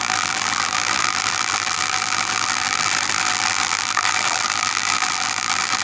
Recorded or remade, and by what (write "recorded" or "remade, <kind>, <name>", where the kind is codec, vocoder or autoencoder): remade, vocoder, BigVGAN v2